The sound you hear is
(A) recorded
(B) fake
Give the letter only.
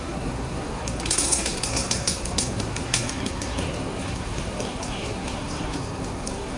B